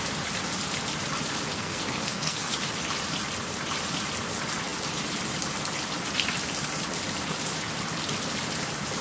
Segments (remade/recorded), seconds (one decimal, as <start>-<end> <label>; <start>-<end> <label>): 0.0-1.5 recorded; 1.5-2.5 remade; 2.5-9.0 recorded